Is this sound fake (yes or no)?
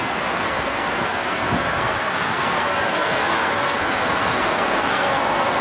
yes